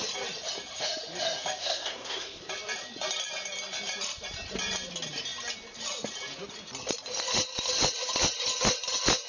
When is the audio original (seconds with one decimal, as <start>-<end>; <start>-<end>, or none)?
0.0-1.6; 2.4-9.3

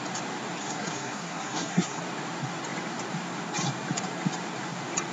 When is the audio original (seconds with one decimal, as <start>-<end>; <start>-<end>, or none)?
0.0-0.6; 2.0-5.1

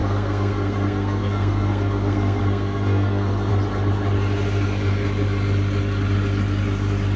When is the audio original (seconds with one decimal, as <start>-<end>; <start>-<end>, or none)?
3.5-7.2

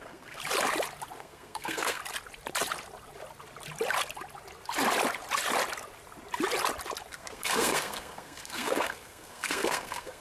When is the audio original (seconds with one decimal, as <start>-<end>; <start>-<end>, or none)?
0.4-1.2; 2.0-7.1

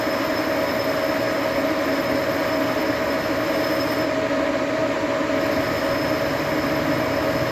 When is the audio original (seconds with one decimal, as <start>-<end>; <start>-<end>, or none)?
0.0-7.5

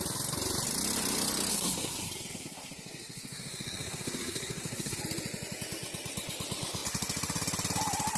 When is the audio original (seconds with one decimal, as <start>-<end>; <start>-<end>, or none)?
0.0-1.5; 5.0-8.2